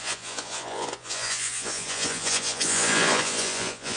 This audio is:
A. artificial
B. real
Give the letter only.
A